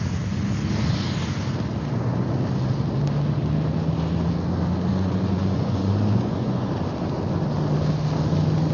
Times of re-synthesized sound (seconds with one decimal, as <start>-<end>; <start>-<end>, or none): 4.9-6.7